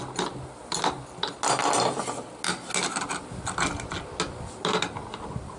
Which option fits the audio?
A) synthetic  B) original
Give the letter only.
B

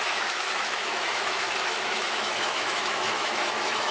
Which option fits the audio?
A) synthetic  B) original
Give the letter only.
A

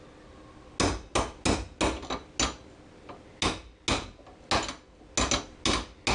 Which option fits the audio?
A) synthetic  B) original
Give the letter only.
B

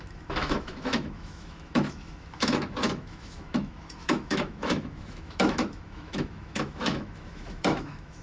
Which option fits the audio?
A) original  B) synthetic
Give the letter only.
B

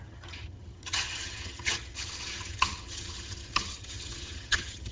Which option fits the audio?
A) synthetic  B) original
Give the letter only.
A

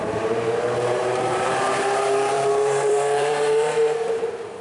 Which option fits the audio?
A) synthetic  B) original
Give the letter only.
A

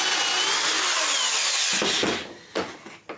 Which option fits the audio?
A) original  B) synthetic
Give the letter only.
A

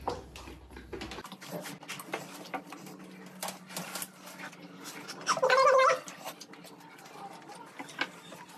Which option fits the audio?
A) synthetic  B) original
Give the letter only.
B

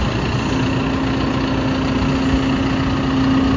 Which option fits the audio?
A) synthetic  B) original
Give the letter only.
B